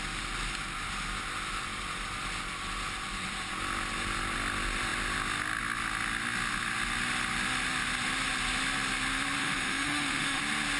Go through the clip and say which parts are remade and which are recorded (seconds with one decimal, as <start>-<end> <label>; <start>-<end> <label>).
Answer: 0.0-9.4 recorded; 9.4-10.4 remade; 10.4-10.8 recorded